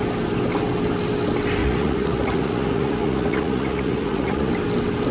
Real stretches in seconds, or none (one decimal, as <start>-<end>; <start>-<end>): 0.0-1.6; 4.5-5.1